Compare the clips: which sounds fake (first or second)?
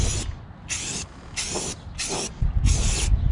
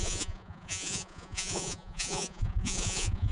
second